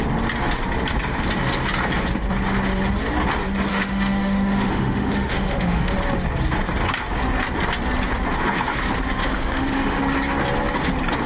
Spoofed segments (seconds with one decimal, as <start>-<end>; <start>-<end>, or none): 3.7-5.9; 9.2-10.0